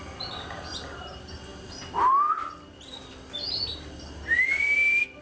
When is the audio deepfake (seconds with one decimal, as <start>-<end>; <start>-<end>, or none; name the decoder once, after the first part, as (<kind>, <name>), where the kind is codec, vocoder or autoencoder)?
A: none